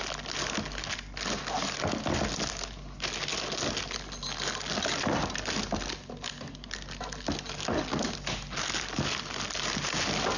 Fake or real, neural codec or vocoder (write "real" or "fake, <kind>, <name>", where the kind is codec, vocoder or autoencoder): real